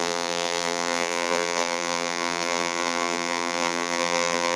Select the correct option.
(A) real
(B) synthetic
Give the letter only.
B